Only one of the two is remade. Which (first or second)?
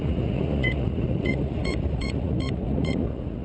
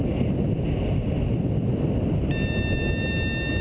first